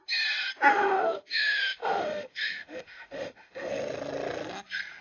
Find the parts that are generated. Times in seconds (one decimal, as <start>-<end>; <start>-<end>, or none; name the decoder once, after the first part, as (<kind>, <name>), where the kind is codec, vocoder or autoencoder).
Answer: 0.7-3.7 (autoencoder, DAC-VAE)